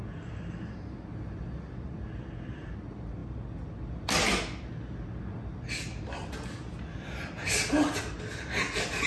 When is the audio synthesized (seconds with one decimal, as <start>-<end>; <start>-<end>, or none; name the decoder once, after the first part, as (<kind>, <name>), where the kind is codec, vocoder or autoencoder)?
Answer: none